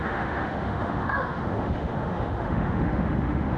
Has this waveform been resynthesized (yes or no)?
yes